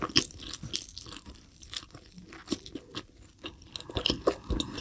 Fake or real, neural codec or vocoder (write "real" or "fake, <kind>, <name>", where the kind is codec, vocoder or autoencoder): real